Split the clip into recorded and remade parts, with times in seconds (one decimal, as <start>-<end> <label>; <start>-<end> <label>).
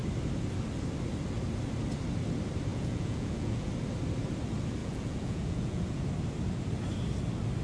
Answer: 0.0-2.7 recorded; 2.7-3.7 remade; 3.7-4.8 recorded; 4.8-6.0 remade; 6.0-7.6 recorded